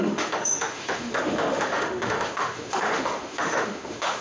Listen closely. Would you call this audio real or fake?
fake